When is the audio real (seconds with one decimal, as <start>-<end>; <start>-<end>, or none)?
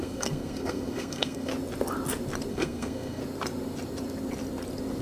1.5-2.5; 3.2-5.0